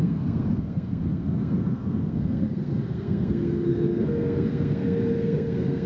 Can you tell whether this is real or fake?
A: fake